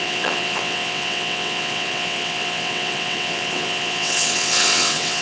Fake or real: fake